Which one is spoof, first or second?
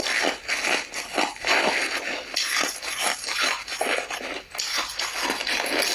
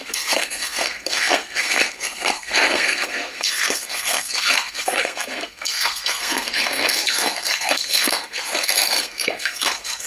second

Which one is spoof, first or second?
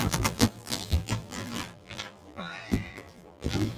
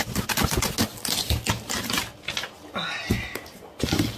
first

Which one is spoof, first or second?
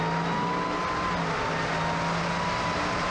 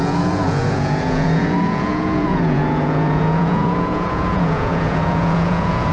second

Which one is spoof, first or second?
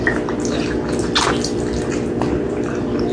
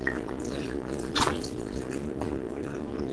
second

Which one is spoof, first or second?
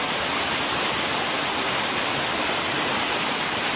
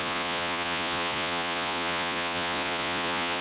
second